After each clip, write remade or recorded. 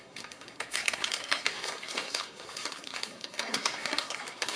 remade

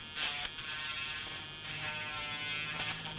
recorded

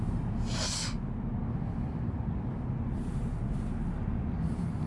recorded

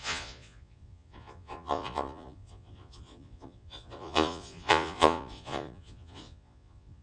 remade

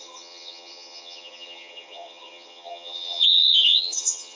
remade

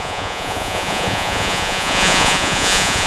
remade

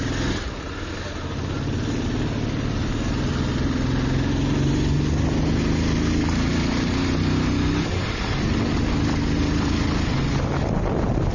recorded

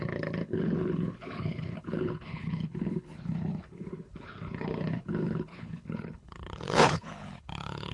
remade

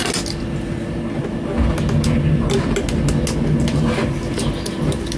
recorded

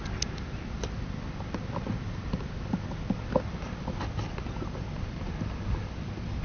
recorded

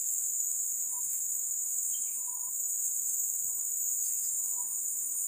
remade